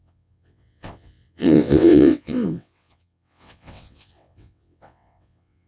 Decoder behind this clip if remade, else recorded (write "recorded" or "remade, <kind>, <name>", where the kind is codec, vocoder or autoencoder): remade, vocoder, WaveNeXt